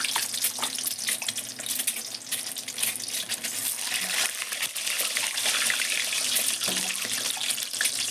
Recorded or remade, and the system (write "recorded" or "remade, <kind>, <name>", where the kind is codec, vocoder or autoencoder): recorded